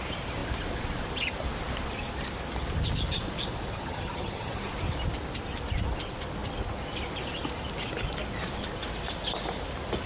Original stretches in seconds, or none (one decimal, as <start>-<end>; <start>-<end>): 0.0-3.7; 4.7-10.1

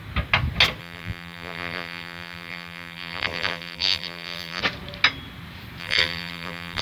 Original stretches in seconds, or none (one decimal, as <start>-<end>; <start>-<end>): 0.0-0.8; 4.6-5.8

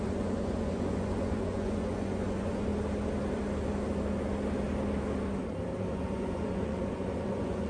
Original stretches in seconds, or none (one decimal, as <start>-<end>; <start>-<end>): 2.7-5.9

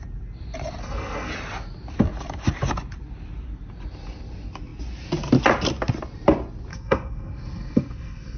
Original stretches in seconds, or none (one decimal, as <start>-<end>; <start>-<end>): 0.0-0.8; 1.3-6.7

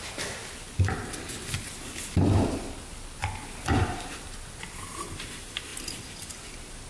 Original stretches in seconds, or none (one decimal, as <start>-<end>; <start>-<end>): 0.0-6.9

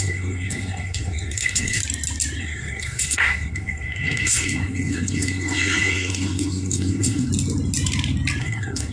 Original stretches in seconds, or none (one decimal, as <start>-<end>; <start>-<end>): 1.8-2.4; 7.3-8.4

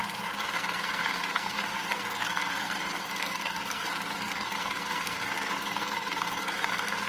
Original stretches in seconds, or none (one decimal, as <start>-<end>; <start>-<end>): none